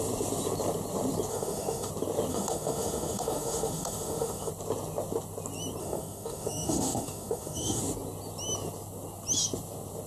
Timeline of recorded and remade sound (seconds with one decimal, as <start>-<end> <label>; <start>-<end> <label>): 0.0-1.3 recorded; 1.3-1.9 remade; 1.9-2.3 recorded; 2.3-4.5 remade; 4.5-5.8 recorded; 5.8-7.8 remade; 7.8-10.1 recorded